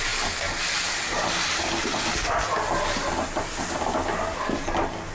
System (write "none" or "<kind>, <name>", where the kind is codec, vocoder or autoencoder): none